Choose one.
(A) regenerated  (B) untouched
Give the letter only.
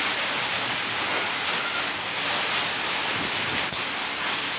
B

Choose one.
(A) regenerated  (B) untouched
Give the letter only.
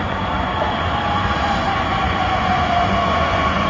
A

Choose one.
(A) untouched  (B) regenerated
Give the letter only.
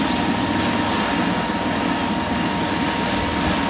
A